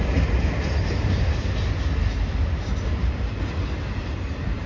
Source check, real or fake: real